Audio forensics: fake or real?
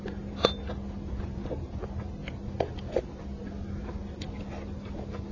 real